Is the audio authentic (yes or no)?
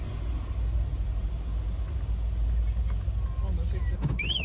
yes